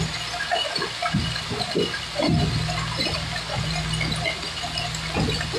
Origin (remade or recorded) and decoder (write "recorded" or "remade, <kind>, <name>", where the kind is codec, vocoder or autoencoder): recorded